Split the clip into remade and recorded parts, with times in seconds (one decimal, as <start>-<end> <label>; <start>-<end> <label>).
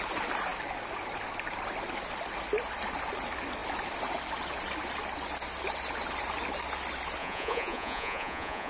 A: 0.0-7.2 recorded; 7.2-8.7 remade